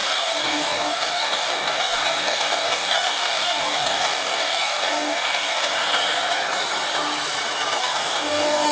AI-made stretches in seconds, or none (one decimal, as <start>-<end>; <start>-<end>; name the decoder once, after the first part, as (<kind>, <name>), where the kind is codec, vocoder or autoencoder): 0.0-5.7 (codec, DAC); 7.8-8.7